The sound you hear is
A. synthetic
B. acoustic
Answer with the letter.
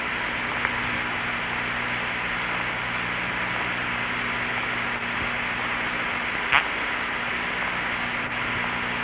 B